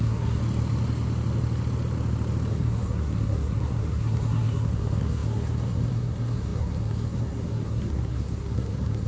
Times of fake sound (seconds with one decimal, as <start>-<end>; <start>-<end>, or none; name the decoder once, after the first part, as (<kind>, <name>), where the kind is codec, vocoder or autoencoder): 0.0-0.4 (codec, SNAC); 2.5-9.1